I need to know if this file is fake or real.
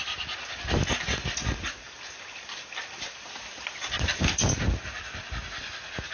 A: real